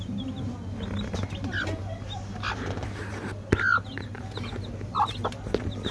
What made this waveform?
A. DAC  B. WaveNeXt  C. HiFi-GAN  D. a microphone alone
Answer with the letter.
D